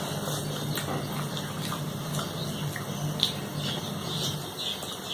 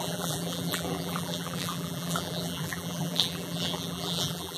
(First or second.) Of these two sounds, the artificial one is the second